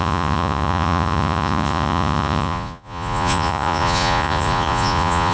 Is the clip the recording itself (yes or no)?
no